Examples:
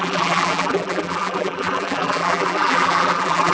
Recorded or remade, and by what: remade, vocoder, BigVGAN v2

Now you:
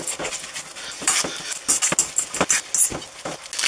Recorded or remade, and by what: recorded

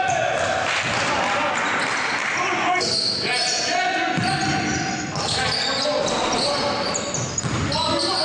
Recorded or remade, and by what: recorded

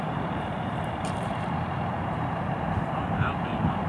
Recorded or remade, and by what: remade, vocoder, BigVGAN v2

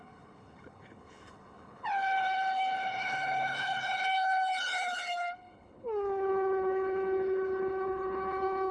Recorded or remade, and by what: remade, codec, HILCodec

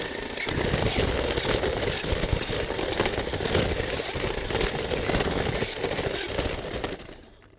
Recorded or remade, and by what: recorded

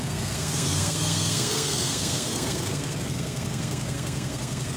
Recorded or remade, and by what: remade, codec, SNAC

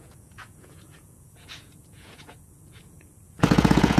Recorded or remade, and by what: remade, vocoder, Vocos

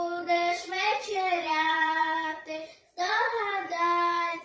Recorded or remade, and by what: remade, vocoder, Vocos